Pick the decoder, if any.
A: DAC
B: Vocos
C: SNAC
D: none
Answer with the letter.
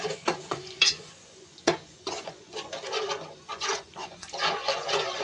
B